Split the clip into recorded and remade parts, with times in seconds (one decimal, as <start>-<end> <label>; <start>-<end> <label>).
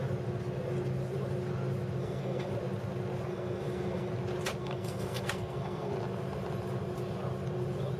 0.0-2.0 recorded; 2.0-2.5 remade; 2.5-3.3 recorded; 3.3-4.1 remade; 4.1-4.6 recorded; 4.6-5.9 remade; 5.9-8.0 recorded